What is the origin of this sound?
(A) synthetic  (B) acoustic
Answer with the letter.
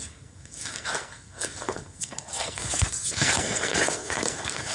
A